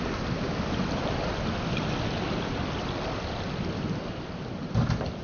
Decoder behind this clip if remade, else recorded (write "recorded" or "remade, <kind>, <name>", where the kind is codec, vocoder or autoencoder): recorded